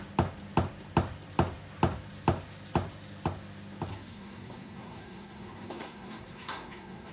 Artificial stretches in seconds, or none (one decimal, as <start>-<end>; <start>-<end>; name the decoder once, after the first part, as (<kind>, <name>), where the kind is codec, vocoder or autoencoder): 3.9-7.1 (codec, SNAC)

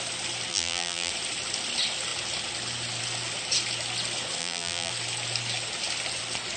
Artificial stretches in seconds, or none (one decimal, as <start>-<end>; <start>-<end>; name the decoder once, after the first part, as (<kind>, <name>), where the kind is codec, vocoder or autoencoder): 0.5-1.1 (vocoder, BigVGAN v2); 4.4-4.9